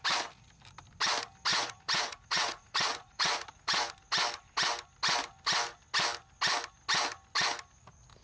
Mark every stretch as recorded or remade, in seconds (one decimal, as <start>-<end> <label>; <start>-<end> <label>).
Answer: 0.0-1.5 recorded; 1.5-3.9 remade; 3.9-8.2 recorded